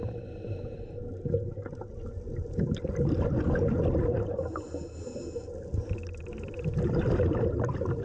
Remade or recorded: recorded